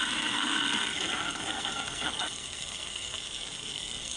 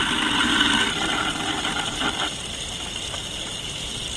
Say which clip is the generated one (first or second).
first